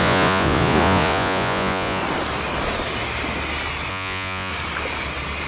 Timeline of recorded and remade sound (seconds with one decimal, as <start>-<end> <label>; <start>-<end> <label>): 0.0-2.0 remade; 2.0-3.9 recorded; 3.9-4.5 remade; 4.5-5.5 recorded